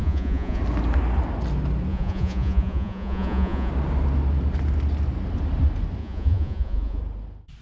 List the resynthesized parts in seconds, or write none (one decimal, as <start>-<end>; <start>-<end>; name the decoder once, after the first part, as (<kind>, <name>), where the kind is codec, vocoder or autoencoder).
0.0-0.6 (vocoder, Vocos); 1.9-3.7; 6.0-7.0